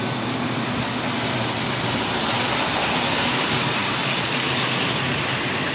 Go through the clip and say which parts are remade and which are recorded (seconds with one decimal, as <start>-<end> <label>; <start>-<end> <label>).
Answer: 0.0-5.7 recorded